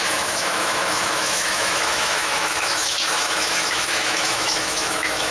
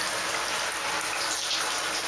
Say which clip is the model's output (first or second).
first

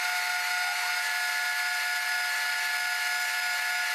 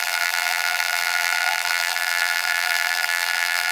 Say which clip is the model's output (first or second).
second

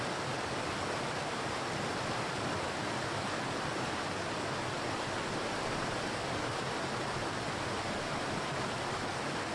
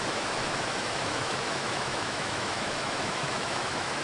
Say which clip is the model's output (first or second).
second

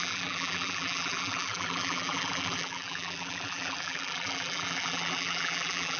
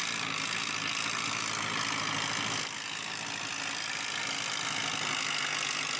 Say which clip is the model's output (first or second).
first